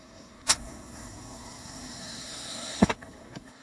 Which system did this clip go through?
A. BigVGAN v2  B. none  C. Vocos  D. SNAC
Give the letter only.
D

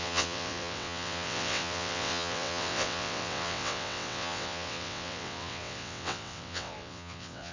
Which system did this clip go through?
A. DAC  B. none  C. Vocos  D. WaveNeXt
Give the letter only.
D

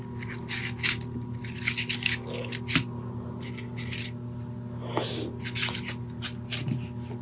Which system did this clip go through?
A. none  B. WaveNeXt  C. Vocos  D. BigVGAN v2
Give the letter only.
A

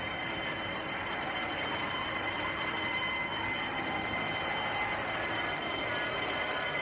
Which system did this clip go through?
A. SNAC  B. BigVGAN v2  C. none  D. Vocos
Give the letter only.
C